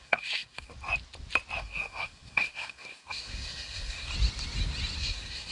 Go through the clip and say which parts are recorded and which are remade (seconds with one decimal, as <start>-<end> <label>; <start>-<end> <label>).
0.0-0.7 remade; 0.7-1.6 recorded; 1.6-4.1 remade; 4.1-5.0 recorded; 5.0-5.5 remade